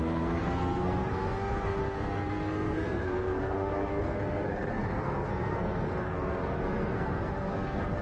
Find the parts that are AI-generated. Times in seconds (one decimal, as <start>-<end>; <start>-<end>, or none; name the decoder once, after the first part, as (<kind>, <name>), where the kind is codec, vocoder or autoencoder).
0.0-8.0 (codec, SNAC)